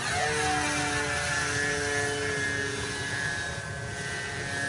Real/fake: real